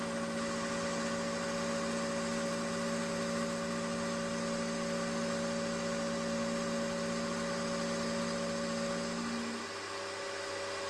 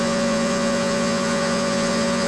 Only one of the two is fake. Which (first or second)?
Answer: second